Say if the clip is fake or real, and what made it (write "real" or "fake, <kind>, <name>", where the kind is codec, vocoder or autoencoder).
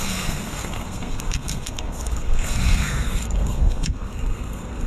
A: fake, codec, SNAC